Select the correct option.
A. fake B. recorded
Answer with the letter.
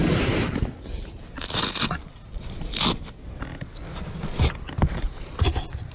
B